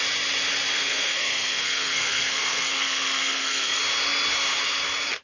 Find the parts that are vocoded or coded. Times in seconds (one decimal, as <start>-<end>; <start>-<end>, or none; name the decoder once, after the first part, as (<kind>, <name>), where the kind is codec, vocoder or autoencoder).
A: 0.7-3.8 (codec, SNAC)